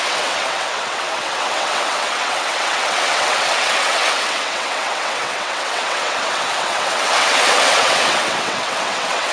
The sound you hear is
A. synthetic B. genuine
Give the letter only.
A